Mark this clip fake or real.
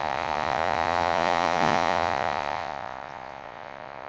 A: fake